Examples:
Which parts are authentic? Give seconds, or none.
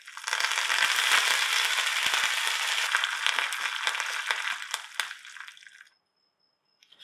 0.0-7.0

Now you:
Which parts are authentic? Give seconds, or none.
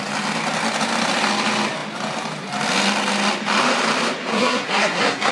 0.0-4.3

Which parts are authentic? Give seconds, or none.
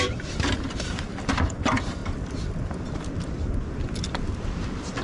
none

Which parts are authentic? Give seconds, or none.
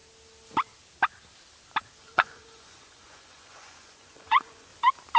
0.0-2.0; 4.7-5.2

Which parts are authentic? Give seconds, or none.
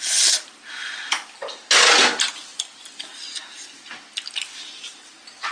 0.0-5.5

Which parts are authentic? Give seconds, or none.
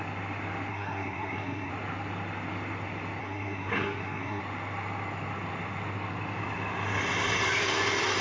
0.0-0.7; 1.7-3.2; 4.4-8.2